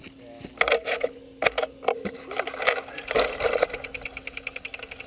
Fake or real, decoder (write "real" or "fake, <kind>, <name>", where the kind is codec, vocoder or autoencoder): real